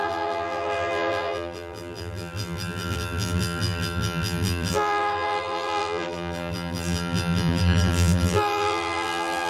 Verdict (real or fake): fake